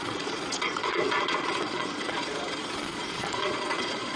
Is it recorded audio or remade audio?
remade